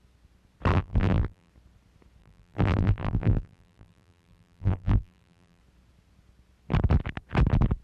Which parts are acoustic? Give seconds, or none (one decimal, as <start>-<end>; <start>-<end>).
0.0-0.7; 1.5-2.2; 5.6-7.8